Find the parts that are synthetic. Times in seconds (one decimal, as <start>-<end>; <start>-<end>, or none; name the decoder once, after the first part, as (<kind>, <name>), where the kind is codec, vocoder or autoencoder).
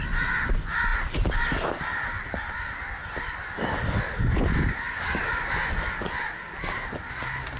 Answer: none